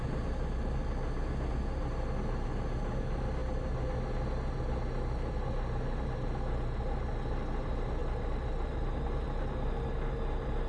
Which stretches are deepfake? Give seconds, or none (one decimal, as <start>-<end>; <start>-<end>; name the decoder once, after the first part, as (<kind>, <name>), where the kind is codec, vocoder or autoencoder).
none

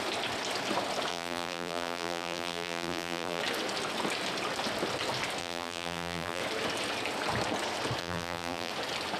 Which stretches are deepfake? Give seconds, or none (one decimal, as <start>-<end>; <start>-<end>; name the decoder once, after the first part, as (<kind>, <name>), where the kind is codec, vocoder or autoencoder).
1.1-3.4 (vocoder, BigVGAN v2); 5.4-6.4; 8.0-8.7